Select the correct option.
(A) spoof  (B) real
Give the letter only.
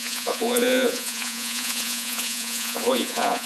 A